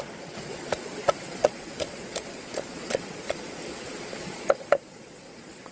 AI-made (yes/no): yes